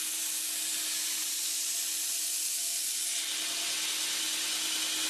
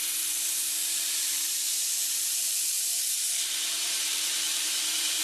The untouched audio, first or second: first